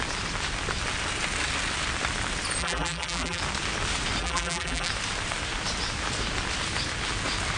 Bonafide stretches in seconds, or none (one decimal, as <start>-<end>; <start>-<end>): 0.0-2.6; 3.4-4.2; 4.9-7.6